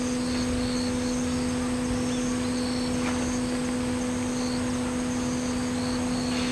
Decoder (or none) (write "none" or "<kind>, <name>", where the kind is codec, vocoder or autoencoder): none